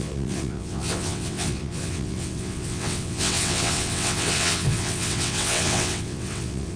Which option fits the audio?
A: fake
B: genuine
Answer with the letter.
A